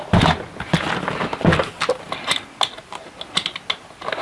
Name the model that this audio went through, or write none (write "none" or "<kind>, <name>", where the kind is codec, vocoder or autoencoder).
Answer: none